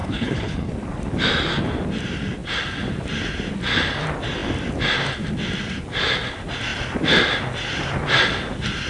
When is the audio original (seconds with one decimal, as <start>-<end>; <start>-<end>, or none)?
0.7-8.9